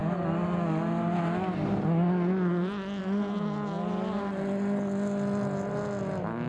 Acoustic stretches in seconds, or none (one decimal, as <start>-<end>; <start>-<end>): 0.0-6.5